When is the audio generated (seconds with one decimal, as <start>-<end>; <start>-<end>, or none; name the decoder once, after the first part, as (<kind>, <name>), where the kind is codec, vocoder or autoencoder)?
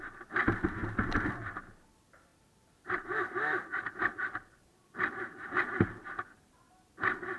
2.3-6.7 (vocoder, BigVGAN v2)